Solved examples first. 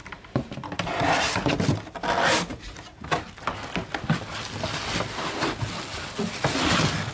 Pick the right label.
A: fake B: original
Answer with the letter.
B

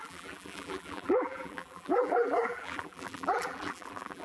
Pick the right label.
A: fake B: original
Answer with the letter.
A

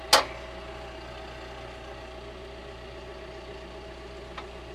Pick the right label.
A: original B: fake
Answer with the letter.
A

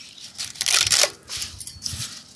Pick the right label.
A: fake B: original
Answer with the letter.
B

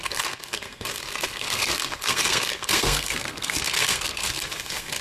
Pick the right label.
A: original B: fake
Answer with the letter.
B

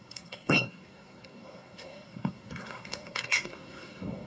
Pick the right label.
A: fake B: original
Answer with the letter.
A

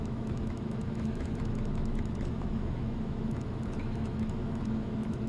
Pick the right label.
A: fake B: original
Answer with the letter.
A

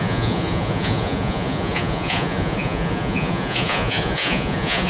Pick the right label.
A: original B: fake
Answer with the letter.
B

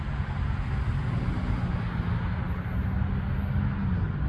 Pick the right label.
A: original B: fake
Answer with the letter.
A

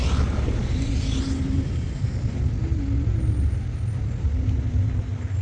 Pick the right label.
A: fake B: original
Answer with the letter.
B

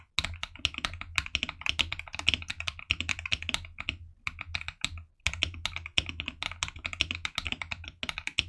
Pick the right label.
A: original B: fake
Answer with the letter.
A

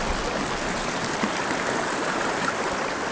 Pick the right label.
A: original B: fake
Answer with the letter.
A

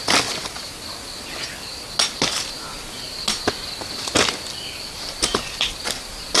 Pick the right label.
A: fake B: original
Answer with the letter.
B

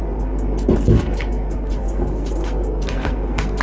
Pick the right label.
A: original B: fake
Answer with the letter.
B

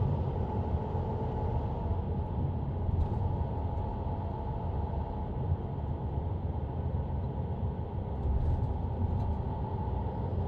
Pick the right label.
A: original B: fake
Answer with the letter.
A